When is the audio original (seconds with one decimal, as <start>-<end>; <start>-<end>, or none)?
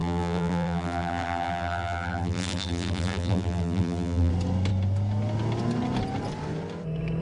4.3-7.2